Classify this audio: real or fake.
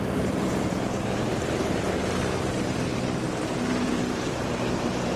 fake